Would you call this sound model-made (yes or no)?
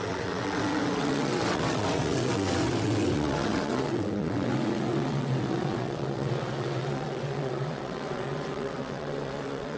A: yes